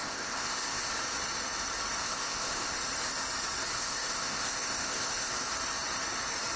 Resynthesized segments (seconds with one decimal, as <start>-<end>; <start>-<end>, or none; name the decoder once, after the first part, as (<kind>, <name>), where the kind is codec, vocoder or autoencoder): 0.0-0.9 (codec, ZipCodec); 2.0-2.8; 3.7-5.3